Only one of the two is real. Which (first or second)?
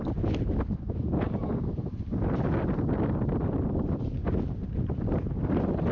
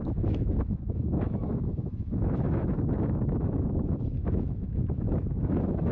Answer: first